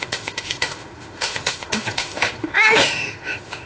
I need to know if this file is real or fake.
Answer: fake